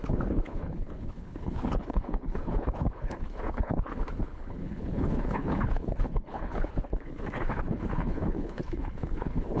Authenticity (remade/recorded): remade